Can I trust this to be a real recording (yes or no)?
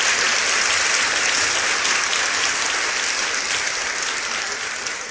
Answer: no